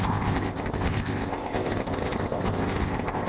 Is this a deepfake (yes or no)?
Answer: yes